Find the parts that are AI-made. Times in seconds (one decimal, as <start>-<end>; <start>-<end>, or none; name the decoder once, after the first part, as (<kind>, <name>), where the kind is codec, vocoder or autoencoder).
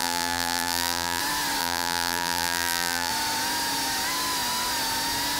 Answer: 0.0-1.2 (vocoder, BigVGAN v2); 1.6-3.1